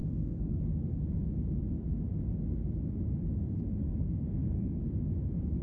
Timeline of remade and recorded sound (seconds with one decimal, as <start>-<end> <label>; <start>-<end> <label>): 0.0-0.6 remade; 0.6-3.8 recorded; 3.8-4.8 remade; 4.8-5.6 recorded